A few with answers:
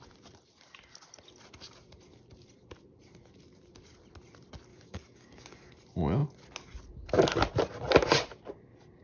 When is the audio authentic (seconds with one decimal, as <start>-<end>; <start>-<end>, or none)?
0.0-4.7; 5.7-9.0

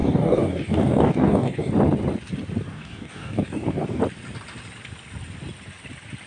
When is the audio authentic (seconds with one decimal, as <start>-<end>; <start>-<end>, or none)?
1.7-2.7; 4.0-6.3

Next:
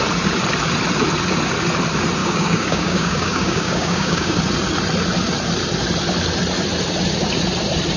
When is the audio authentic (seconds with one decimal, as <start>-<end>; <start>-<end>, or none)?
0.0-2.2; 4.4-8.0

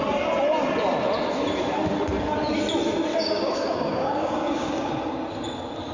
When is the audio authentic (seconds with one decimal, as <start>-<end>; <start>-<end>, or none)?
0.0-3.1; 4.9-5.9

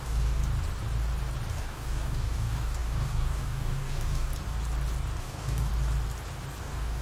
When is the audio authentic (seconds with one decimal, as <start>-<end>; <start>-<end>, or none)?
0.4-1.5; 4.3-5.2; 5.7-6.6

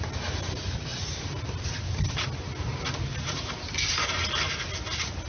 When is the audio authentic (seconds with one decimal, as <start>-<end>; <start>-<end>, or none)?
0.0-5.3

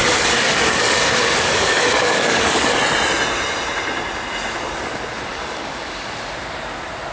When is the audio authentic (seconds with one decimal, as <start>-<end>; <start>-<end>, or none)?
2.8-5.3; 6.1-7.1

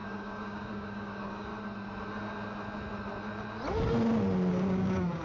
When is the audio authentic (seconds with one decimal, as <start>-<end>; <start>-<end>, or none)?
1.5-4.5